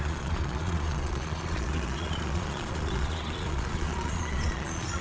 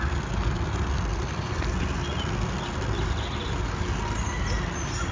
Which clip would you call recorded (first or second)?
second